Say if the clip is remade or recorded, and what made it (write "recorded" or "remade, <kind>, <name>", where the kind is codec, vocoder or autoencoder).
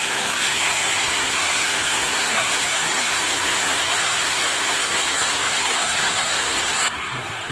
remade, codec, SNAC